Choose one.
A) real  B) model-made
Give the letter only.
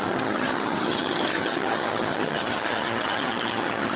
B